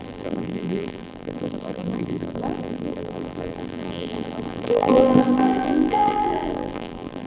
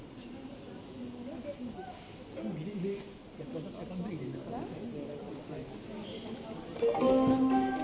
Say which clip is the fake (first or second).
first